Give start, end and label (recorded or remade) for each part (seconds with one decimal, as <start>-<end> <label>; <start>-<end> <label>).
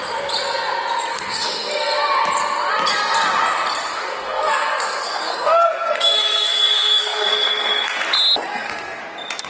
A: 0.0-1.1 recorded; 1.1-1.7 remade; 1.7-3.9 recorded; 3.9-8.0 remade; 8.0-8.5 recorded; 8.5-9.0 remade; 9.0-9.5 recorded